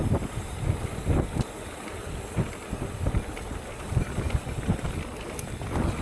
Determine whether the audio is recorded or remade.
recorded